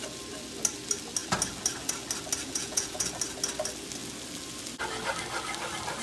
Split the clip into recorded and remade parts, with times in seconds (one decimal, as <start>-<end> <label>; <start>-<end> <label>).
0.0-2.4 recorded; 2.4-3.1 remade; 3.1-6.0 recorded